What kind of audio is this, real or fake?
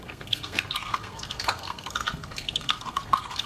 fake